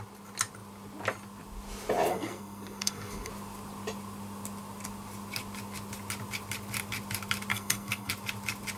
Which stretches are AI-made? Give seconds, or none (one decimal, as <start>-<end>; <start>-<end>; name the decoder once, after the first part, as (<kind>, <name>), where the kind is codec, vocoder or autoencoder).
2.1-3.3 (codec, SNAC); 7.5-8.1